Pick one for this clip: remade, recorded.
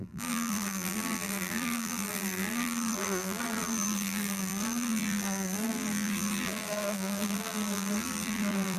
remade